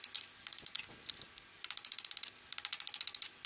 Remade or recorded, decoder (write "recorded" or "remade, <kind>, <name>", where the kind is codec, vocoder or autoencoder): recorded